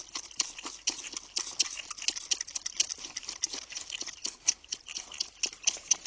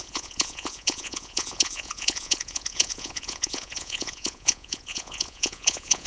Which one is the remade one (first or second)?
second